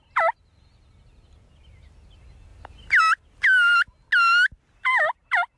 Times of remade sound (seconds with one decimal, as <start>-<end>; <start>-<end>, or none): none